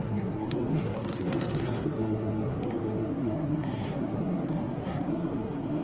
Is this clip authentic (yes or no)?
no